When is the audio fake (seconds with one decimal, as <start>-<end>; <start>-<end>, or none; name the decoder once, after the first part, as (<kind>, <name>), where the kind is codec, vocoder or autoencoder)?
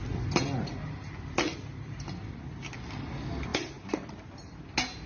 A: none